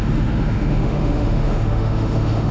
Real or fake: fake